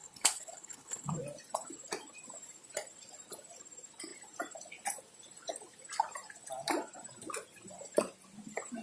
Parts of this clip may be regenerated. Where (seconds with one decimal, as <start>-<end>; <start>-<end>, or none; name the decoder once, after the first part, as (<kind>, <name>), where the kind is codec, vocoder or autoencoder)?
0.0-1.1 (codec, HILCodec)